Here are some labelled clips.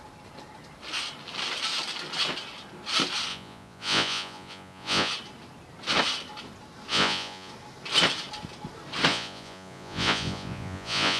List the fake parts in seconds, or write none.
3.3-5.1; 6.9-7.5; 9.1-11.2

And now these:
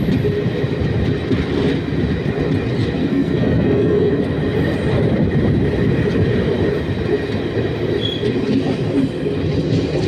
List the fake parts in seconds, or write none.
3.0-4.1

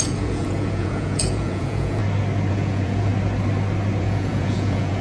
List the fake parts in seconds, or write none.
0.0-2.0; 2.5-3.1; 4.0-5.0

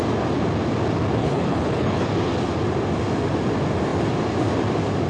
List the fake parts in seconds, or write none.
1.2-2.1

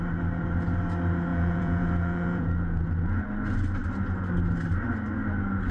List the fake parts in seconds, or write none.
1.3-3.2

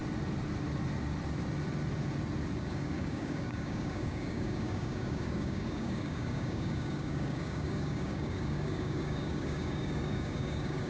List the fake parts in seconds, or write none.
2.6-10.9

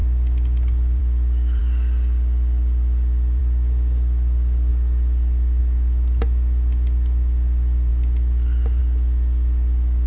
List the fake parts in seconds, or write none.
4.7-5.6

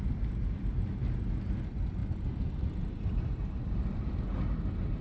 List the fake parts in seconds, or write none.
none